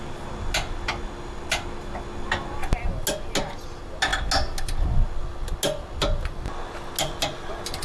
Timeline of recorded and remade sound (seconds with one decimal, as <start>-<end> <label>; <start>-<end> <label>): 0.0-7.8 recorded